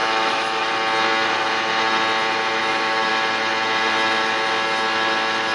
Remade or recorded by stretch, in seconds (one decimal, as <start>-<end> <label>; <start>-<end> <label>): 0.0-0.7 remade; 0.7-2.6 recorded; 2.6-3.1 remade; 3.1-5.5 recorded